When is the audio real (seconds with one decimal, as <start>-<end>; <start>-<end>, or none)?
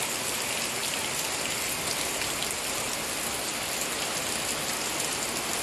0.0-5.6